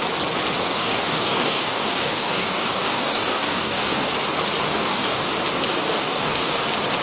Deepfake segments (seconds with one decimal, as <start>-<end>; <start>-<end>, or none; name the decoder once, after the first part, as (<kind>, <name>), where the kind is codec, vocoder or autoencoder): 0.6-4.1 (codec, DAC); 4.7-5.3; 5.7-6.6